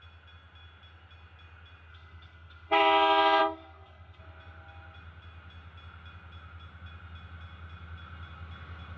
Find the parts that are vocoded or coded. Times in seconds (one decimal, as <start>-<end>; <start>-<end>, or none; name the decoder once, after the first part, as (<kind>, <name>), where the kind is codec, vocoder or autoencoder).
1.9-2.8 (codec, SNAC); 3.4-4.2